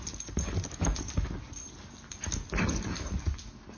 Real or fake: real